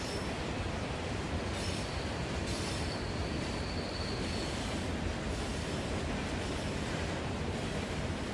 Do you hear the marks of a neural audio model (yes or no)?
no